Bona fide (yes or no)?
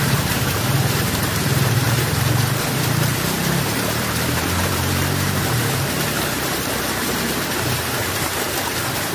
no